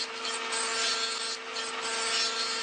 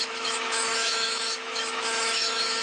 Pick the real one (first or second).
first